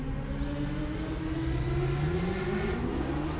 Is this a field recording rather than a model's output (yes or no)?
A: yes